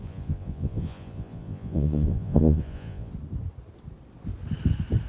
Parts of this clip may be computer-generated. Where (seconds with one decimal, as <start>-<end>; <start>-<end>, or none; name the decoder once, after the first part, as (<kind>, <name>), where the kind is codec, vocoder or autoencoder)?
0.0-3.1 (vocoder, Vocos)